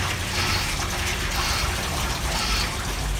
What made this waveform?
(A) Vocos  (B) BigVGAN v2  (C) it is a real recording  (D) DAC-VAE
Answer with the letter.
C